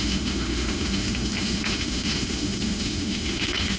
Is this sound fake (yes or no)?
yes